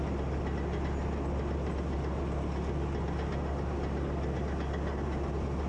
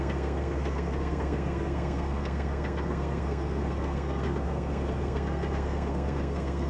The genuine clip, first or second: first